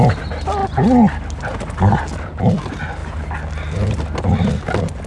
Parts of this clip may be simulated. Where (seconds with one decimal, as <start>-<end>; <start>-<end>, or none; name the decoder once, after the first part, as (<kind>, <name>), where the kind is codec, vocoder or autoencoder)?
none